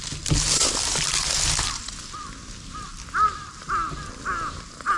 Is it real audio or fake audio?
real